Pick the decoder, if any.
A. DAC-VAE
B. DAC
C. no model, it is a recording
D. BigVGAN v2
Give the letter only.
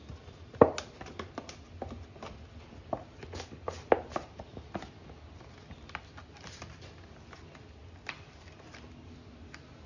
C